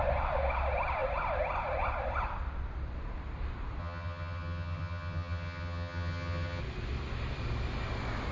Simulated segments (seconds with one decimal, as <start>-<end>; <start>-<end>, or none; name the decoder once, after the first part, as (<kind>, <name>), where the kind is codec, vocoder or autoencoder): 3.8-6.6 (vocoder, HiFi-GAN)